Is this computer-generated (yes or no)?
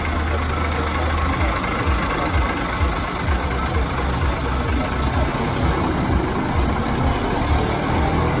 no